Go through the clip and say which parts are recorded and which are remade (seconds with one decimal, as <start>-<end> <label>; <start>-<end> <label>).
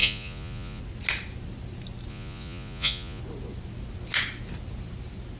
0.0-0.8 remade; 0.8-2.1 recorded; 2.1-3.2 remade; 3.2-5.4 recorded